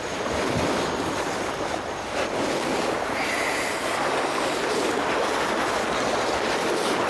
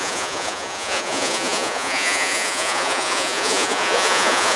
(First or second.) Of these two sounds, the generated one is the second